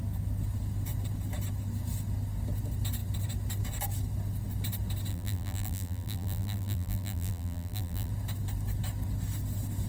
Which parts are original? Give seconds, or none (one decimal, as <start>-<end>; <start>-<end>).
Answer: 0.0-5.1; 8.1-9.9